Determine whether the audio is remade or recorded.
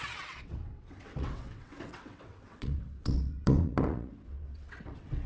remade